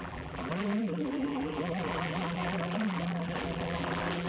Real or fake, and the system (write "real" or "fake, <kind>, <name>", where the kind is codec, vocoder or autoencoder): fake, vocoder, BigVGAN v2